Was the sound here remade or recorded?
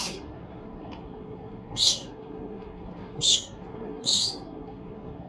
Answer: remade